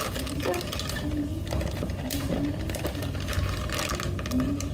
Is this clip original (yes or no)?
yes